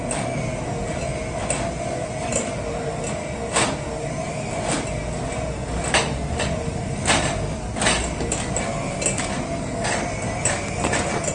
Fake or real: real